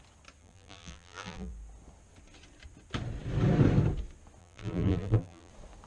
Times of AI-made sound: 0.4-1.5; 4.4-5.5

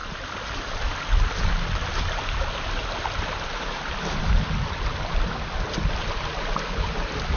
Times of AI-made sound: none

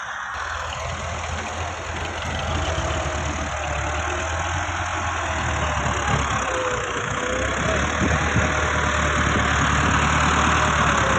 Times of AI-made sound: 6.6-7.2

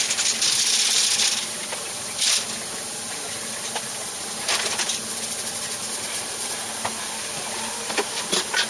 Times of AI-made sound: none

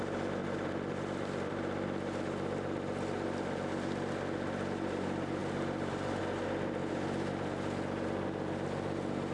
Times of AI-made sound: 0.4-1.5; 5.4-6.2